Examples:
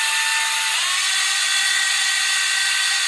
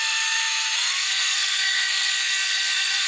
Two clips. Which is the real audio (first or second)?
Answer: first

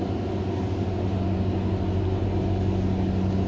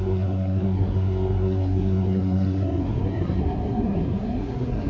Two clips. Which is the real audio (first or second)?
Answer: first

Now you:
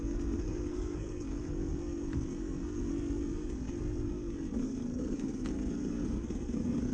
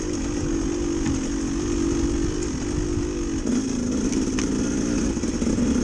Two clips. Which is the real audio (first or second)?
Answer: second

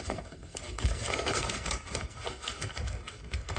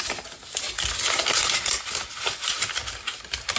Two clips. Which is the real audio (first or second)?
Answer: second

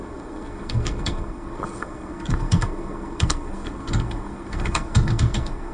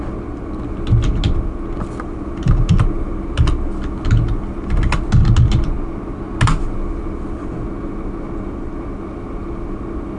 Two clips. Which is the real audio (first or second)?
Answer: second